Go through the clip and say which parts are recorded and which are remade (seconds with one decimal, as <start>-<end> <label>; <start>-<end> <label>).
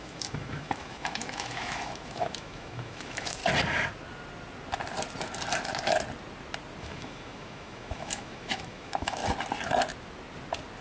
0.0-3.4 remade; 3.4-6.8 recorded; 6.8-9.2 remade; 9.2-10.8 recorded